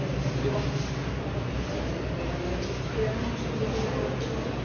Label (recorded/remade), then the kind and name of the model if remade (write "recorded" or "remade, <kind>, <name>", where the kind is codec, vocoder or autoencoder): recorded